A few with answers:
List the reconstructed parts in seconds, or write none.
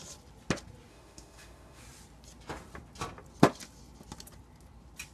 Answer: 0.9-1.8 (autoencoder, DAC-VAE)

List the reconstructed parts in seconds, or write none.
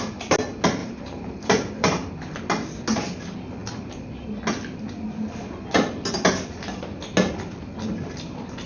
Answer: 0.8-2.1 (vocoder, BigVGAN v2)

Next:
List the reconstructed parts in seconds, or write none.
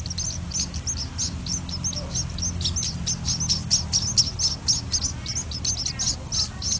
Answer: none